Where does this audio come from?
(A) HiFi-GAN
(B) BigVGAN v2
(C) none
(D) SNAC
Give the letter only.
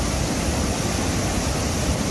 C